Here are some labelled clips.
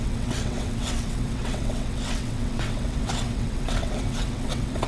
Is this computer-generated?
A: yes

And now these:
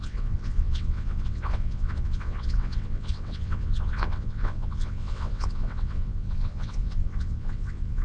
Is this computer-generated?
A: yes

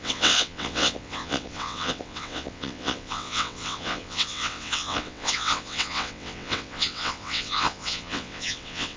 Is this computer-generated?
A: yes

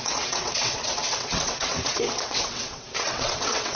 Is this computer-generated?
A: yes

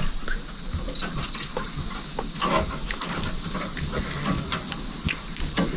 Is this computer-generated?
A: no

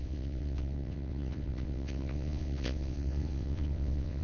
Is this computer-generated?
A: yes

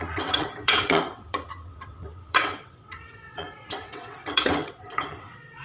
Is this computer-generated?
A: yes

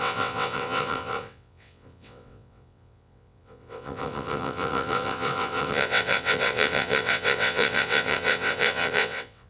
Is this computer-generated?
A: yes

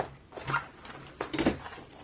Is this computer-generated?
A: no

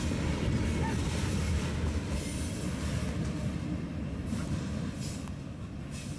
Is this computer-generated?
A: no